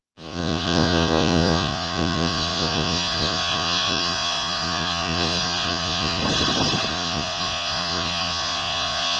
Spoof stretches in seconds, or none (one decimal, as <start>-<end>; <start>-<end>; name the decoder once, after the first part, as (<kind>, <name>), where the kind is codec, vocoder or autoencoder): 0.0-6.2 (vocoder, Vocos); 6.9-9.2